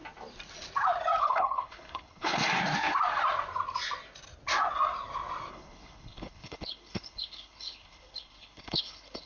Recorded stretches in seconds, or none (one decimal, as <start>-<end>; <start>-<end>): 0.0-1.2; 2.4-5.5

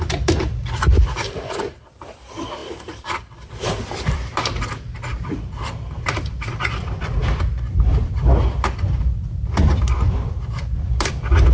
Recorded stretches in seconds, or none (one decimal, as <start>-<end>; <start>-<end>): none